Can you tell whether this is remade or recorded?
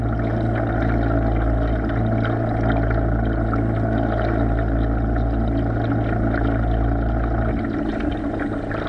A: recorded